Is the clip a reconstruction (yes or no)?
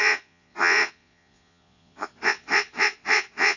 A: yes